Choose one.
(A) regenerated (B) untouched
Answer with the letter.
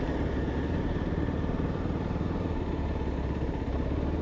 A